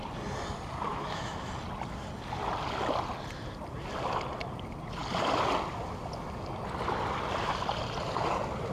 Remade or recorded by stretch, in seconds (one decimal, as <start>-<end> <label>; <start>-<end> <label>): 0.0-0.9 recorded; 0.9-1.5 remade; 1.5-8.7 recorded